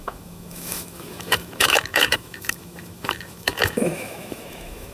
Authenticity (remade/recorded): remade